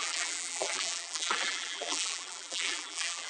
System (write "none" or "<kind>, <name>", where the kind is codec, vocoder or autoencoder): vocoder, BigVGAN v2